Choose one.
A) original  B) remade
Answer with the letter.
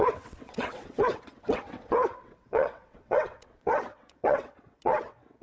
B